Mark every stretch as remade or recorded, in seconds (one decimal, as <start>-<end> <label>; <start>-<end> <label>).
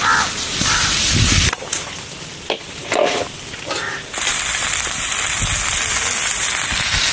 0.0-7.1 recorded